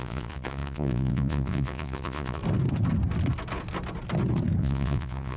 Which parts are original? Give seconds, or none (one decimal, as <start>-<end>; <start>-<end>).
2.4-4.6